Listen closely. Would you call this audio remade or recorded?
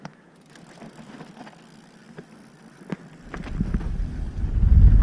recorded